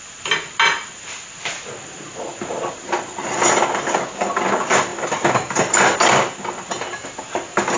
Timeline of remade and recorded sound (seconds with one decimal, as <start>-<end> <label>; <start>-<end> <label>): 0.0-7.8 recorded